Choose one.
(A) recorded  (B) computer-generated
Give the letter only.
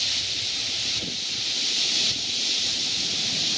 A